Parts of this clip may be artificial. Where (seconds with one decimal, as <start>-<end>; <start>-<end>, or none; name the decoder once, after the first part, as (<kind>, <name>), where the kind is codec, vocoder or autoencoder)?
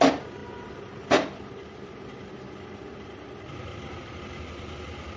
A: none